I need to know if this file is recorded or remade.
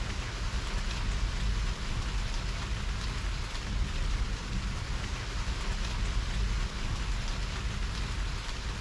recorded